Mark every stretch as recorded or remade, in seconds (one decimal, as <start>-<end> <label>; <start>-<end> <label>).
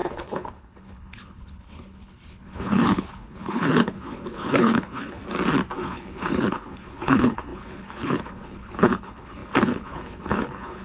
0.0-5.2 remade; 5.2-5.8 recorded; 5.8-10.8 remade